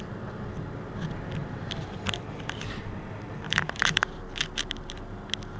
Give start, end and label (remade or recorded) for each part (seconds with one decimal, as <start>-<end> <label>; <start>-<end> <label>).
0.0-1.4 recorded; 1.4-4.2 remade; 4.2-5.6 recorded